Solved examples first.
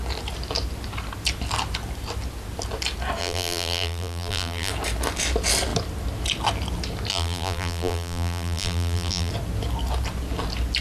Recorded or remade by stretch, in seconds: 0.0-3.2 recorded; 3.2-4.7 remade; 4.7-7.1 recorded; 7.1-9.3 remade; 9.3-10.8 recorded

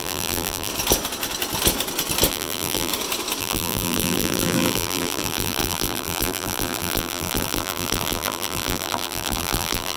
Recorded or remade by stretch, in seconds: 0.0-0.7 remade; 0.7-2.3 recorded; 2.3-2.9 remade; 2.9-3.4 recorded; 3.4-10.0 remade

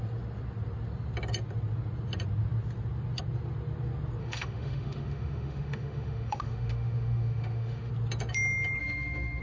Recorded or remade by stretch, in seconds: 0.0-4.2 recorded; 4.2-7.9 remade; 7.9-8.8 recorded; 8.8-9.4 remade

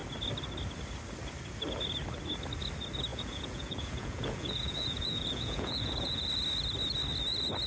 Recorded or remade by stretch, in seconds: 0.0-3.1 recorded; 3.1-6.3 remade; 6.3-7.7 recorded

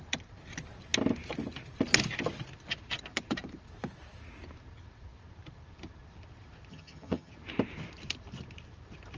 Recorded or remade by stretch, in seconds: 0.0-6.7 recorded; 6.7-7.3 remade; 7.3-9.2 recorded

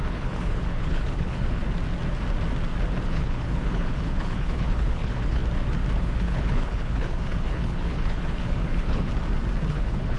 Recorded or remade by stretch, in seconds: 0.0-1.6 remade; 1.6-3.1 recorded; 3.1-5.4 remade; 5.4-6.0 recorded; 6.0-9.1 remade; 9.1-9.7 recorded; 9.7-10.2 remade